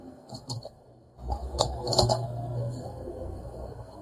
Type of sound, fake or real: fake